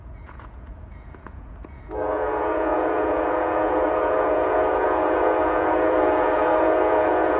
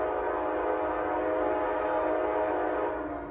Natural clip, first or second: second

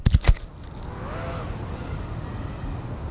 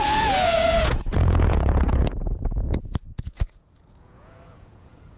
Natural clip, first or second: first